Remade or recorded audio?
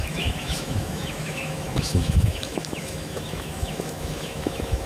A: remade